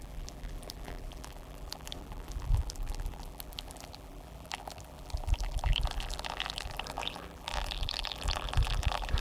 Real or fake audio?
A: fake